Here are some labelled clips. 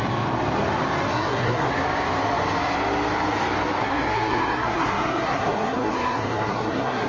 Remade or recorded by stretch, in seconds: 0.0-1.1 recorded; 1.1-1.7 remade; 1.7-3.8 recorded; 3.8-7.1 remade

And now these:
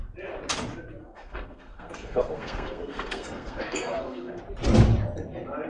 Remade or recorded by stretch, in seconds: 0.0-1.0 recorded; 1.0-4.4 remade; 4.4-5.7 recorded

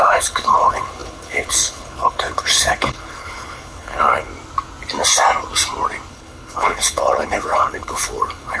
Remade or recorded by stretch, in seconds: 0.0-4.3 remade; 4.3-6.1 recorded; 6.1-8.6 remade